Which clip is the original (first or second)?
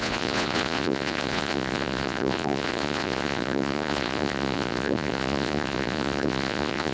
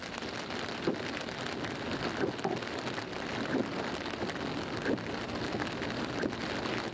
second